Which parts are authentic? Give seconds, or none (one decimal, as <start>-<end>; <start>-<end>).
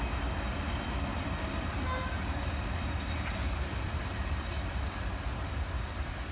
0.0-1.1; 4.9-6.3